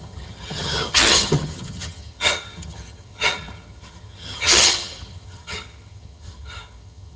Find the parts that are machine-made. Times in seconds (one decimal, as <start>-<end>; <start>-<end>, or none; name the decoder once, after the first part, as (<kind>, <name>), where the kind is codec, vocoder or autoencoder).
0.0-7.2 (vocoder, HiFi-GAN)